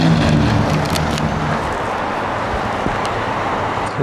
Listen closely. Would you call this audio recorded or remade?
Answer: recorded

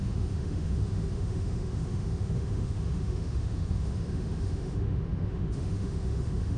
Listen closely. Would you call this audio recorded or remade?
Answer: remade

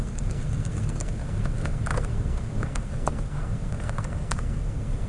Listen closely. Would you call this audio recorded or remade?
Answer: remade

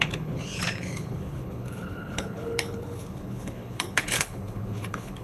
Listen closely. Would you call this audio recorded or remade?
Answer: remade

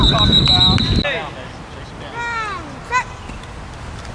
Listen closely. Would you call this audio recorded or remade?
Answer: recorded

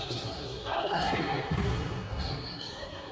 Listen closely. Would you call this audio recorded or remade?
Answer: remade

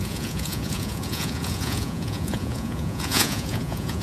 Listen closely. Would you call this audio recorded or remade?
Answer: remade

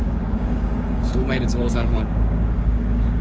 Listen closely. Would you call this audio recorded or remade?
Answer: remade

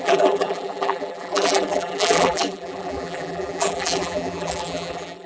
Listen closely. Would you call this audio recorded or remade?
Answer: remade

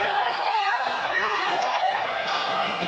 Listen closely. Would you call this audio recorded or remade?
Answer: remade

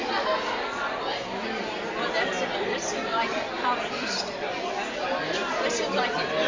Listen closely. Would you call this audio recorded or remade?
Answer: recorded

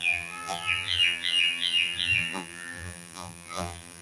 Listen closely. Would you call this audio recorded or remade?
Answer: remade